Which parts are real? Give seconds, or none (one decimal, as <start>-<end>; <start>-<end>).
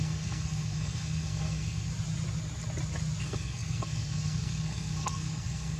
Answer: 1.9-3.2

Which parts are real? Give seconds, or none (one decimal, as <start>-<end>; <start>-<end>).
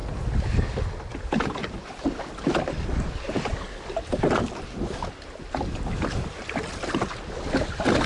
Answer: 0.0-8.1